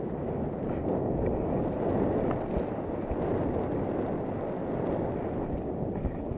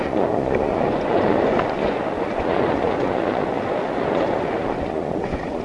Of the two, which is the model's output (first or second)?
second